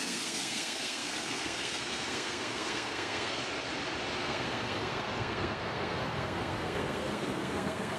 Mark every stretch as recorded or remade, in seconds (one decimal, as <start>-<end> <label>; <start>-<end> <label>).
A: 0.0-3.4 remade; 3.4-4.2 recorded; 4.2-8.0 remade